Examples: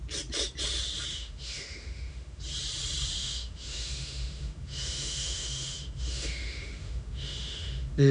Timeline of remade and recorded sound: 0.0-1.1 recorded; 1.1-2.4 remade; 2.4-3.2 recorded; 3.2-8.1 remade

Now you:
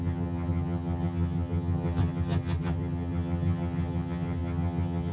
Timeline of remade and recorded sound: 0.0-5.1 remade

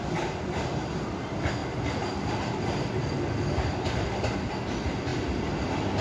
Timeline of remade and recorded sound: 0.0-6.0 recorded